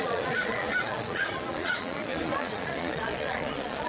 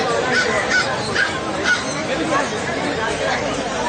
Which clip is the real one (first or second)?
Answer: second